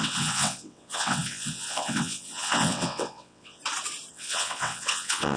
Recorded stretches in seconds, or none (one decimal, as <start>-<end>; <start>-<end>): 3.6-4.1